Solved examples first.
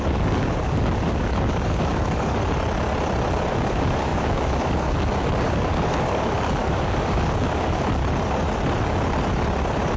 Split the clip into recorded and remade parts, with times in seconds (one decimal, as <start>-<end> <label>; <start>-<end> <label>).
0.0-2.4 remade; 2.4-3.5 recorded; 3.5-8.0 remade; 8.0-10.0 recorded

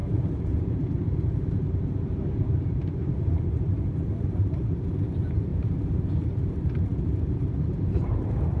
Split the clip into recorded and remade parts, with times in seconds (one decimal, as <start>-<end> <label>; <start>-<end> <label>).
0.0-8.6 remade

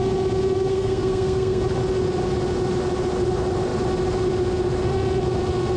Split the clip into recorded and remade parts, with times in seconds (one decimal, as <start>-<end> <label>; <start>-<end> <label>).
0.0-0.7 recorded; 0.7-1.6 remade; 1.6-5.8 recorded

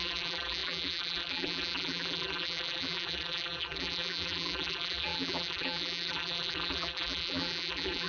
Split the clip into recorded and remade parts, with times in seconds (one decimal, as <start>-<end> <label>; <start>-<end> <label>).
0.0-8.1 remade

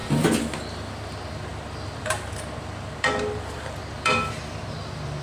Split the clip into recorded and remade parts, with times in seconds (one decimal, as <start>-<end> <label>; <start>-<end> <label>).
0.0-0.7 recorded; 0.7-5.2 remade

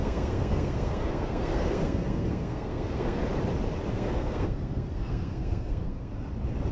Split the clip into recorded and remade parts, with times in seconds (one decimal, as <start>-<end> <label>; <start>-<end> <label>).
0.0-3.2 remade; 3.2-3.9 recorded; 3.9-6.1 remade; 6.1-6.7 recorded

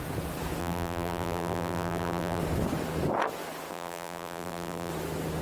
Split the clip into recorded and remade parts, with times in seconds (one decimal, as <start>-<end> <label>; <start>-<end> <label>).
0.0-0.6 recorded; 0.6-2.4 remade; 2.4-3.7 recorded; 3.7-4.9 remade; 4.9-5.4 recorded